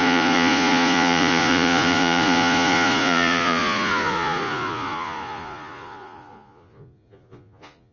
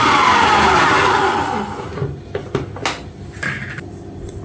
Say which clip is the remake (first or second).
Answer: first